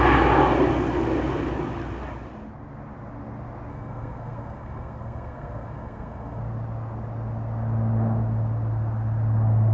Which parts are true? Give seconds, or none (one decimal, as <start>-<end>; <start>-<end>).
0.0-3.7; 6.4-9.7